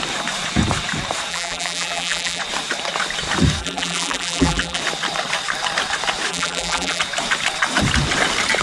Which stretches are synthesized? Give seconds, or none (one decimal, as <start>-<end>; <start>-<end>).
1.3-2.4; 3.6-4.8; 6.3-7.0